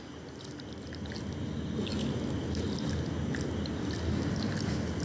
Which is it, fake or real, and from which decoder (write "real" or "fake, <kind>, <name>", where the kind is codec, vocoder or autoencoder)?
real